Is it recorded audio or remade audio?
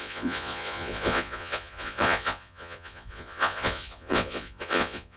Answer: remade